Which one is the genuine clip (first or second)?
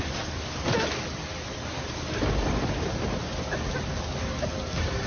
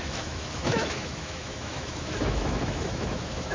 first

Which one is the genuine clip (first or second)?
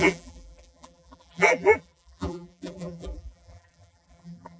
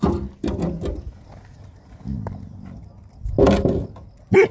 second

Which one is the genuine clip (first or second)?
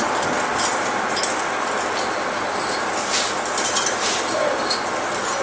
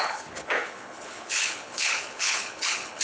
first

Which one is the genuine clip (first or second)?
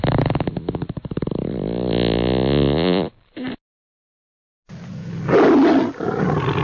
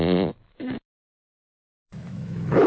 first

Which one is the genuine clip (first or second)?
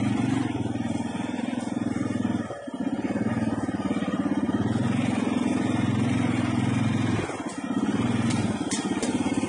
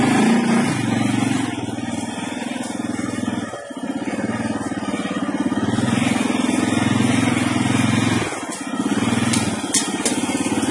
second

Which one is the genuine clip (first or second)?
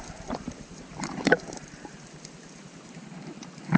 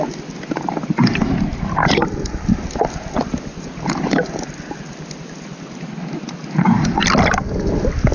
second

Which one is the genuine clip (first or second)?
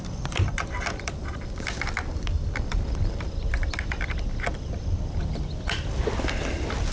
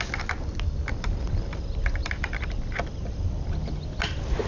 second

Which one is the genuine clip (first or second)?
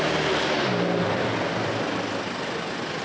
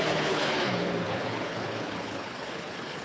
first